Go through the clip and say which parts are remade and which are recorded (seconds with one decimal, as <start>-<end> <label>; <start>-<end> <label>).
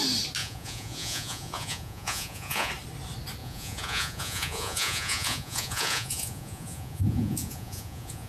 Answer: 0.0-0.4 recorded; 0.4-2.7 remade; 2.7-3.4 recorded; 3.4-8.3 remade